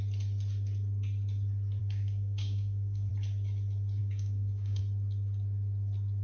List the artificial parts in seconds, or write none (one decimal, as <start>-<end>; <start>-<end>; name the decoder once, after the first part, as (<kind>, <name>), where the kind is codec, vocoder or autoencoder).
1.8-3.1 (codec, DAC); 4.0-4.8